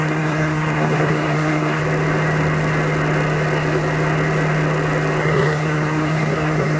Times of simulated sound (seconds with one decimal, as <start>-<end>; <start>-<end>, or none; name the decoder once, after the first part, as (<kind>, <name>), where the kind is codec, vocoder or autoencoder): 0.0-1.8 (codec, SNAC); 5.2-6.8